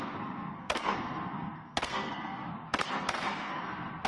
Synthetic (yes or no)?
yes